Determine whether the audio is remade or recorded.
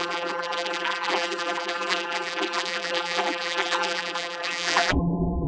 remade